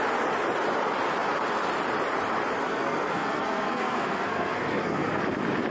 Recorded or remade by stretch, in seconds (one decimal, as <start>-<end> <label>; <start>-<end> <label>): 0.0-2.7 recorded; 2.7-5.2 remade; 5.2-5.7 recorded